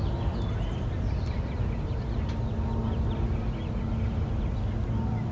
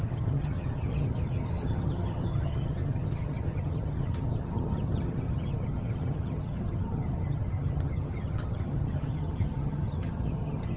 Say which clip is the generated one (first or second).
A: second